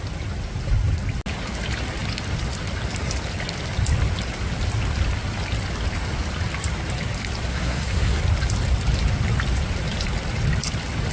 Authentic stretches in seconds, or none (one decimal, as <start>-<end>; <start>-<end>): 0.0-7.5; 8.2-11.1